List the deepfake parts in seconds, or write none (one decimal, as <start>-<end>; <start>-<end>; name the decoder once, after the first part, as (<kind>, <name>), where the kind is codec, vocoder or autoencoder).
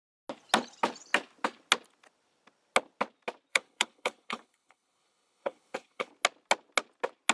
3.5-6.1 (codec, HILCodec)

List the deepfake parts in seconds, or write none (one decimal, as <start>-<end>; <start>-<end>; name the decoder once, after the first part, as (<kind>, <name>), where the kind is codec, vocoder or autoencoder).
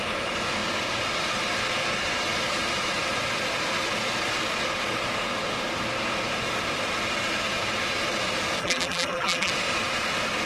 8.6-9.5 (vocoder, BigVGAN v2)